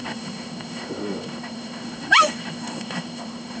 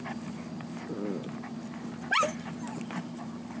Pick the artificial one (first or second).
first